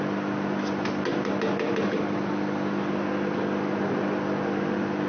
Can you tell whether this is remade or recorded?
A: recorded